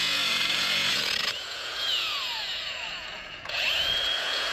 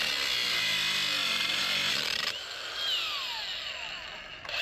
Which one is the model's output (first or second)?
first